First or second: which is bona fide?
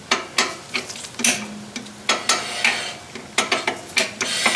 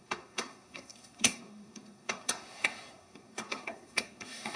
first